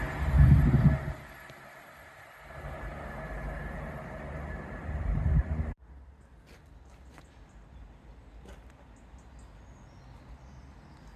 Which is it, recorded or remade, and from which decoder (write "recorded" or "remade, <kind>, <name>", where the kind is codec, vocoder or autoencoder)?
recorded